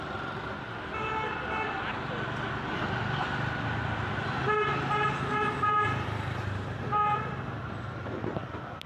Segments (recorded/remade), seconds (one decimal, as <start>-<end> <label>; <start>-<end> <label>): 0.0-8.9 recorded